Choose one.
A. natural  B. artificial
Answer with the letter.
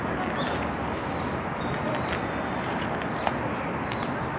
A